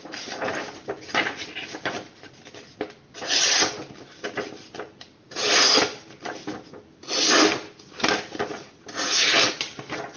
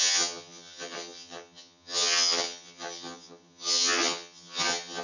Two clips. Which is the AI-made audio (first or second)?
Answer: second